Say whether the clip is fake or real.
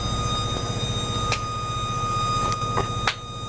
real